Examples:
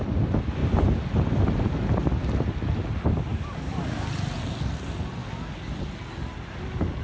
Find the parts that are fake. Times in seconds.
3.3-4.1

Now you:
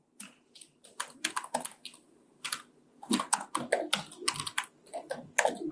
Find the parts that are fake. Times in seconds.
none

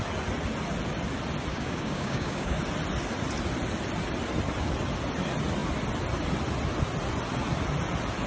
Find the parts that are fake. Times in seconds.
1.5-2.6

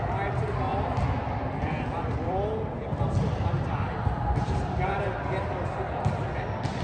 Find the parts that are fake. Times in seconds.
0.7-3.0

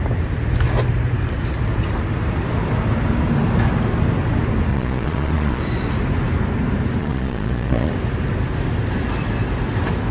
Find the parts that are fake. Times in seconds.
4.7-5.6; 7.0-7.9